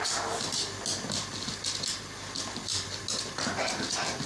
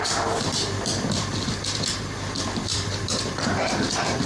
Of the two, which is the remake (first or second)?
second